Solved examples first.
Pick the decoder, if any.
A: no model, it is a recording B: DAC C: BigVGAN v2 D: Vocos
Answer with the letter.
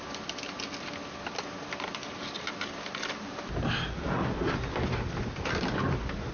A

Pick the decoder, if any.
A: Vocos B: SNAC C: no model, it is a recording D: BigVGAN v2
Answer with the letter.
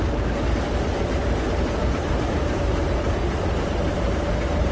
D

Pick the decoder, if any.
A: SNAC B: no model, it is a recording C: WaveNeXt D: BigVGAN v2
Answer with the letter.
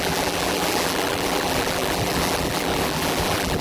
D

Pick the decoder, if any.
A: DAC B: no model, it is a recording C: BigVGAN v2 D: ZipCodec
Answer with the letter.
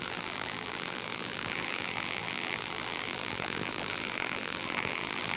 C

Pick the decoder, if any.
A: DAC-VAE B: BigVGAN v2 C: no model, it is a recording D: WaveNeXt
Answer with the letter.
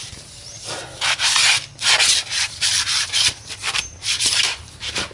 B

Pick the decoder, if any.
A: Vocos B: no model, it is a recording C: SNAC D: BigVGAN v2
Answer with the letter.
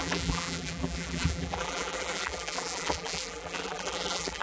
D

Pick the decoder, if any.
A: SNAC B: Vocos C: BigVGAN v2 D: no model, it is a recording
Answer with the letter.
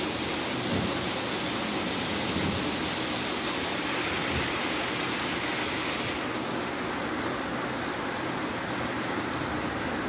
D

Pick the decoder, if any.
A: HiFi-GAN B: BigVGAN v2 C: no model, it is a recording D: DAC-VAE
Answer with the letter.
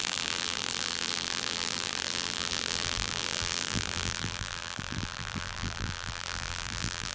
B